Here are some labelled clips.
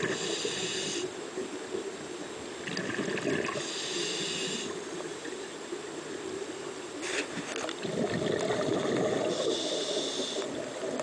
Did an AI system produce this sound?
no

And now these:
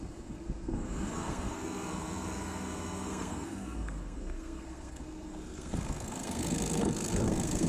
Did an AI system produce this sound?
yes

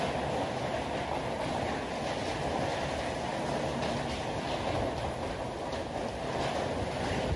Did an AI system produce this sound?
no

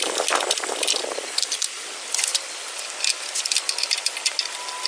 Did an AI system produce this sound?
no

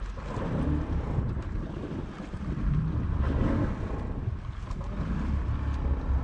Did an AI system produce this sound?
no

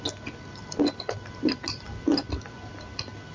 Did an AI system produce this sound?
no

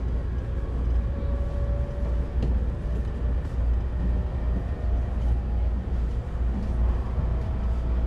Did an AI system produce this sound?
no